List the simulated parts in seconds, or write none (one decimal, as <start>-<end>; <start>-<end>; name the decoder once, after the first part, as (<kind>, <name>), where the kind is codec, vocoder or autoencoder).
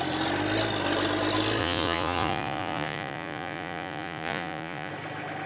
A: 1.6-4.9 (vocoder, Vocos)